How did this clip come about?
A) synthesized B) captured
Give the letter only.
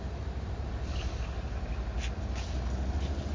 B